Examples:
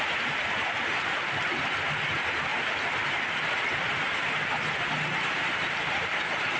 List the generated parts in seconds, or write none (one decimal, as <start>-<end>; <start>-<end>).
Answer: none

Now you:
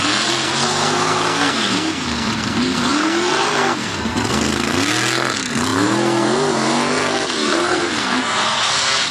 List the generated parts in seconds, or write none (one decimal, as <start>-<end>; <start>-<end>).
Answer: 0.0-9.1

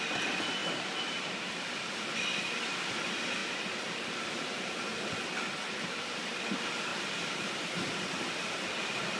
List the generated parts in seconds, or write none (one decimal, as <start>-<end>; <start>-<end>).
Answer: 0.6-1.2; 3.4-4.7; 6.9-9.2